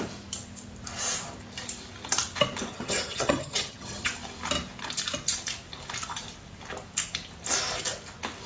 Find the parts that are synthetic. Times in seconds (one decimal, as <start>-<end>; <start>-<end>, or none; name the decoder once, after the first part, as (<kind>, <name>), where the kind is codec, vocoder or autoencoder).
2.7-4.1 (vocoder, HiFi-GAN)